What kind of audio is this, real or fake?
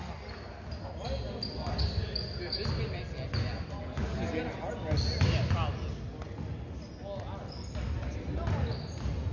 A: real